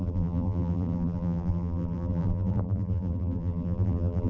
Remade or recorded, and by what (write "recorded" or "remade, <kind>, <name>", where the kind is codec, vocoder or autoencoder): remade, vocoder, BigVGAN v2